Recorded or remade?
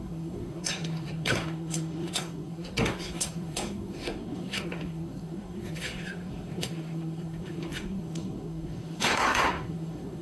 remade